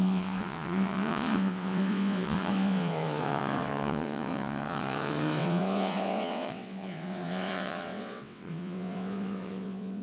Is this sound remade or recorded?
remade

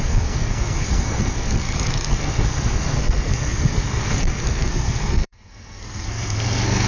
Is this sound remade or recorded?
remade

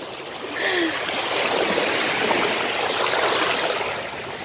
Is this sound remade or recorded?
recorded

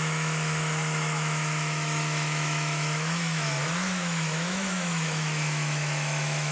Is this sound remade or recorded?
remade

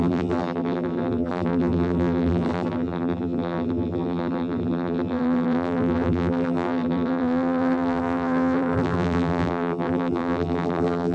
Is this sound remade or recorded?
remade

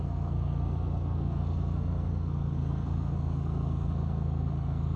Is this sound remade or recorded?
remade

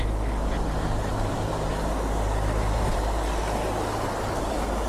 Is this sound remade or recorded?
recorded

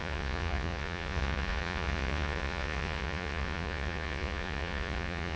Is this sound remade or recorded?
remade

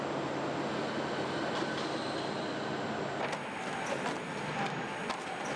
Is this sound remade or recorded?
recorded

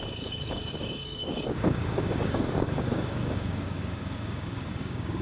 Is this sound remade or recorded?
remade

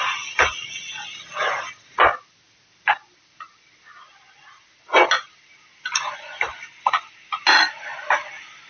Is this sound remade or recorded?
recorded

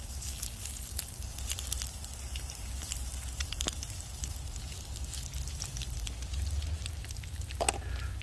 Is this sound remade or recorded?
recorded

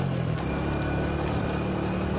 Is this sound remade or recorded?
recorded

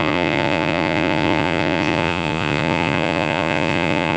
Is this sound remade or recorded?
remade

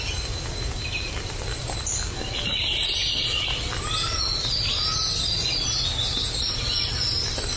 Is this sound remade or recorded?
recorded